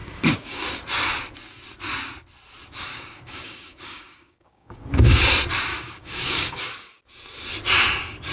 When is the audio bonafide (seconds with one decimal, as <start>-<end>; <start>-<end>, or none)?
0.7-2.9; 5.2-5.7; 7.0-8.3